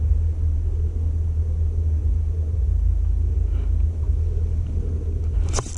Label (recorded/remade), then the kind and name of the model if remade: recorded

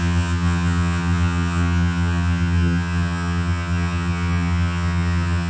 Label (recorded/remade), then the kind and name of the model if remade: remade, vocoder, HiFi-GAN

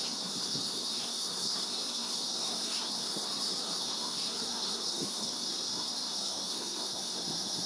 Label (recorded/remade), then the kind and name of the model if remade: remade, codec, SNAC